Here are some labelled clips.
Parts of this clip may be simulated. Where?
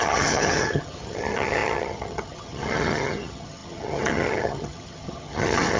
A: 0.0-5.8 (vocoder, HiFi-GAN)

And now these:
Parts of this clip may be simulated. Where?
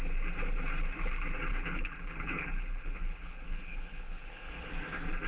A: 1.5-4.7 (codec, HILCodec)